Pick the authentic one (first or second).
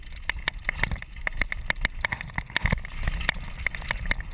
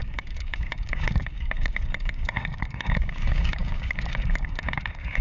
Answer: first